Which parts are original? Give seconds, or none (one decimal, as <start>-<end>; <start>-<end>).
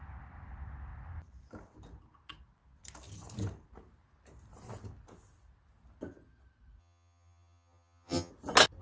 0.0-6.8; 8.3-8.8